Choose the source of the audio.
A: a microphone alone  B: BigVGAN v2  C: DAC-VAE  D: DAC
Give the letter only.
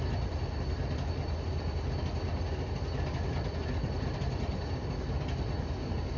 A